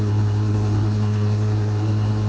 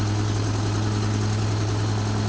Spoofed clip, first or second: first